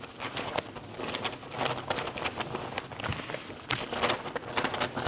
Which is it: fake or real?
real